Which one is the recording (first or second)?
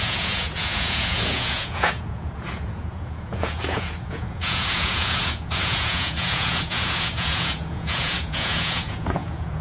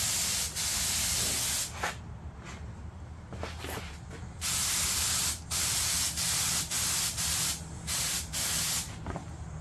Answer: second